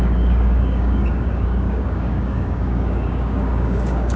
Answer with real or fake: fake